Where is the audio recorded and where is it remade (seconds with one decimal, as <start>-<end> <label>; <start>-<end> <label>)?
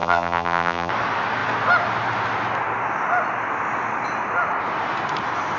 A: 0.0-0.9 remade; 0.9-5.6 recorded